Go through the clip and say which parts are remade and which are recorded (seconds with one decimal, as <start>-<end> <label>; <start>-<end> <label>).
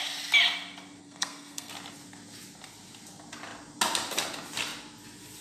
0.0-1.0 recorded; 1.0-1.7 remade; 1.7-5.4 recorded